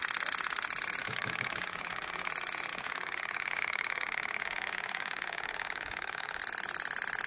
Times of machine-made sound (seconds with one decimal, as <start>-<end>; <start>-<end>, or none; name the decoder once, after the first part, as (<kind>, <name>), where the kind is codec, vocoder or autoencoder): 1.0-2.3 (codec, DAC); 2.7-6.4